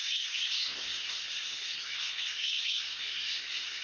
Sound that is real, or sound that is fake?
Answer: fake